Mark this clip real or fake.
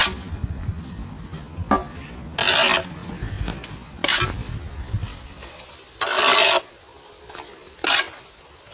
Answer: real